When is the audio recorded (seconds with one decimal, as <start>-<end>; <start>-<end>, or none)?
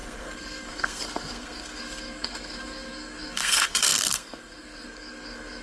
none